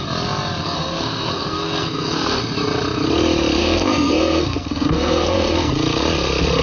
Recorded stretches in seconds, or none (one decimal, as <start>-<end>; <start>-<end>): 0.0-0.6; 2.4-3.6; 5.7-6.6